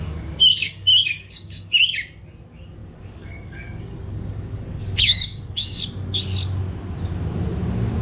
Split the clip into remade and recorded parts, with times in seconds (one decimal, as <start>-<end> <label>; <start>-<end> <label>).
0.0-0.6 recorded; 0.6-1.8 remade; 1.8-2.8 recorded; 2.8-5.8 remade; 5.8-8.0 recorded